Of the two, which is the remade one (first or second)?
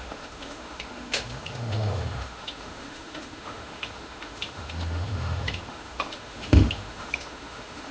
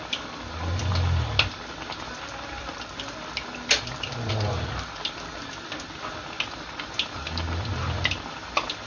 first